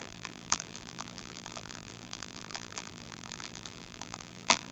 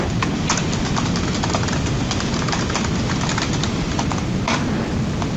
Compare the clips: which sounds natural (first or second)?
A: second